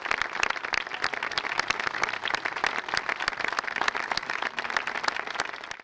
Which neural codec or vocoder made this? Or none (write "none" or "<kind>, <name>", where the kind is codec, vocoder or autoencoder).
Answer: none